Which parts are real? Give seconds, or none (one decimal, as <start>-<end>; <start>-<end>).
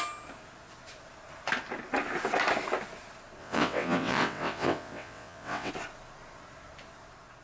0.0-3.4; 5.7-7.4